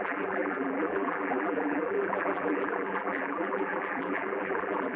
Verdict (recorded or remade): remade